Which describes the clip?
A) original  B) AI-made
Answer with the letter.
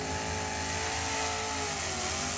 A